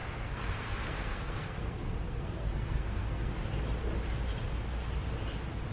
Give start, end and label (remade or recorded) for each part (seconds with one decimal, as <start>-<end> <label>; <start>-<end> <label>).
0.0-3.4 remade; 3.4-5.7 recorded